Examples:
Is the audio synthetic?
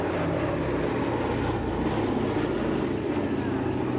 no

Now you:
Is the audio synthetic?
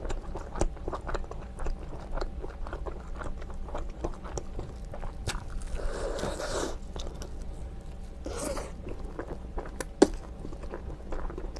no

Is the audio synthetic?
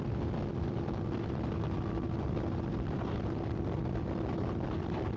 no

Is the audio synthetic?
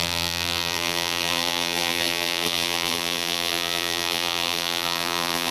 yes